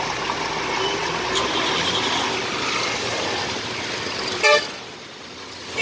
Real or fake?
real